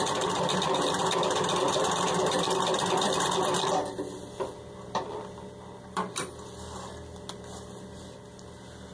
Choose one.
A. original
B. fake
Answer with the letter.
B